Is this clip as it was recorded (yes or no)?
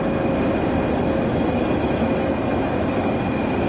yes